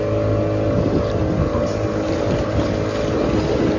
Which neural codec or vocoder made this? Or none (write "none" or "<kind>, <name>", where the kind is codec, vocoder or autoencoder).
none